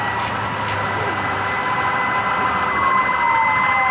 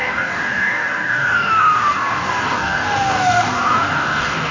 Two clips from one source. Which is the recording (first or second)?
first